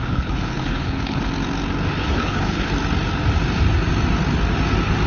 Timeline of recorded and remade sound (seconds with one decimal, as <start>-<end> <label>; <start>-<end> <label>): 0.0-1.3 remade; 1.3-2.0 recorded; 2.0-2.7 remade; 2.7-5.1 recorded